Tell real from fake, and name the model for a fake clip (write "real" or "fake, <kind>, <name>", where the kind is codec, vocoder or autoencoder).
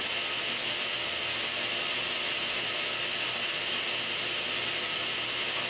real